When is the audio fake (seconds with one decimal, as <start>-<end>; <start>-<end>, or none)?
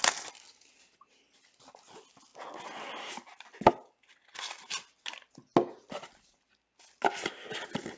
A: none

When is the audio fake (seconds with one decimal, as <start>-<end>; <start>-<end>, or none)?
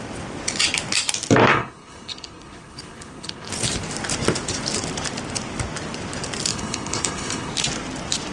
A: 1.5-3.5; 6.5-7.5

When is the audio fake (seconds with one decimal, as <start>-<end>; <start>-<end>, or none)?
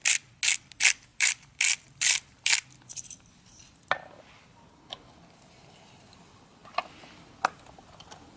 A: 1.1-3.7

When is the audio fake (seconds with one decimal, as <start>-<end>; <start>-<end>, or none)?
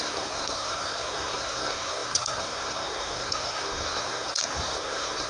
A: 0.0-5.3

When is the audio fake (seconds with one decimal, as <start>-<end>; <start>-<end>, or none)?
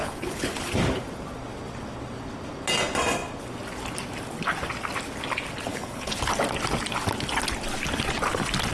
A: 0.0-0.7; 5.7-6.2